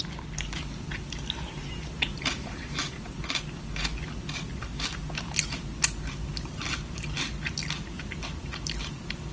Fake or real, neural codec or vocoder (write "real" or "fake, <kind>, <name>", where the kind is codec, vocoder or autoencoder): real